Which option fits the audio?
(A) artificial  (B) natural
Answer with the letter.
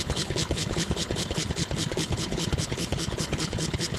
A